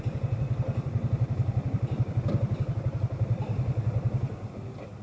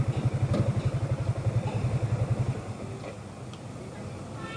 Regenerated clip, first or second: first